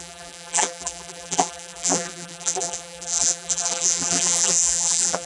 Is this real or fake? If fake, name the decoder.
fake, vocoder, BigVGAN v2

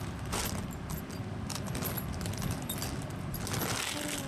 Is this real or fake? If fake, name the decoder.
real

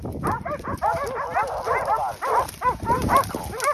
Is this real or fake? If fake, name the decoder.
real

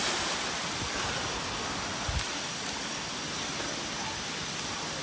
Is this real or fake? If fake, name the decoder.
real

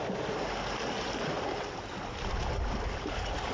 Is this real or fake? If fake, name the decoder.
real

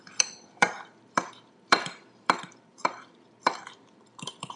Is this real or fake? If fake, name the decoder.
fake, vocoder, BigVGAN v2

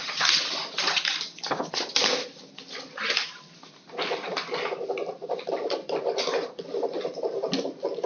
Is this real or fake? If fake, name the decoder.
real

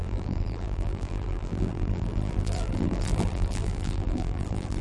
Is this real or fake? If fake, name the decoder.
fake, vocoder, BigVGAN v2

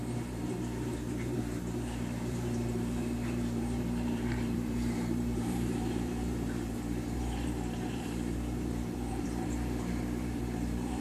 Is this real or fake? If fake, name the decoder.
fake, vocoder, BigVGAN v2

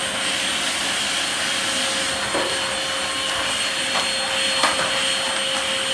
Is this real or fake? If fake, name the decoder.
real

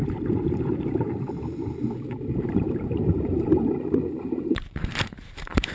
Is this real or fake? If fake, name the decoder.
fake, vocoder, BigVGAN v2